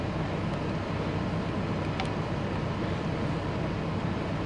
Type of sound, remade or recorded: recorded